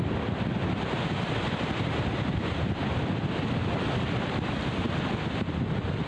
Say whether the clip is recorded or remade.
recorded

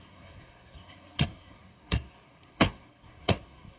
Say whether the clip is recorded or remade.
remade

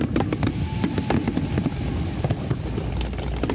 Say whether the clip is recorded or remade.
recorded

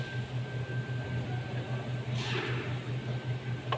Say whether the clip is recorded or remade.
recorded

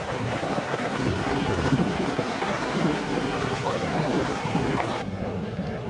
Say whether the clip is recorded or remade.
remade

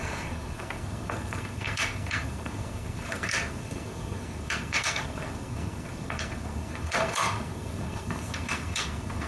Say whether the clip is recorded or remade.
remade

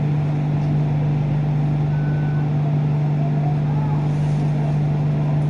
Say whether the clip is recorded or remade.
recorded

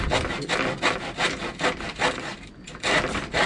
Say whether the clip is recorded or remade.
recorded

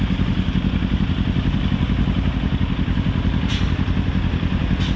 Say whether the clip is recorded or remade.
recorded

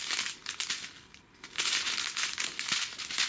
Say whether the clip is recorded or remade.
recorded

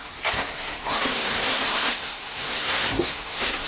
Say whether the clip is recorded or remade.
remade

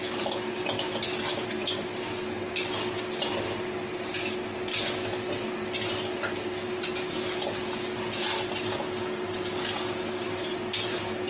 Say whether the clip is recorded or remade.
recorded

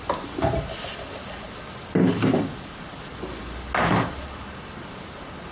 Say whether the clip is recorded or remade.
recorded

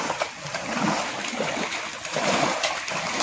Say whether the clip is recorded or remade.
recorded